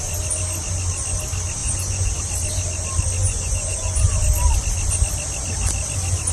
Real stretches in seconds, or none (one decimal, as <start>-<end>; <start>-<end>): 0.0-1.6; 2.1-3.2; 4.2-6.3